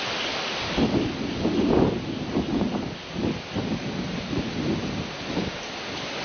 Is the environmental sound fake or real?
real